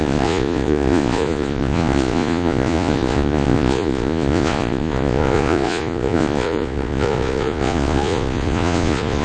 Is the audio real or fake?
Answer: fake